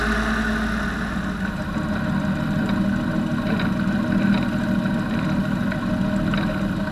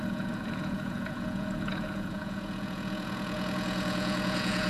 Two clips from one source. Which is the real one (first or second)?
first